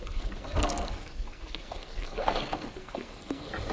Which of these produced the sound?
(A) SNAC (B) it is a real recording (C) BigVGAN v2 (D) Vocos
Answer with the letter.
A